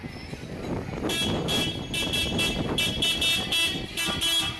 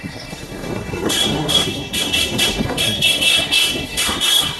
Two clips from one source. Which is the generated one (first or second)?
second